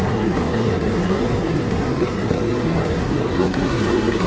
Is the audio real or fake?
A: fake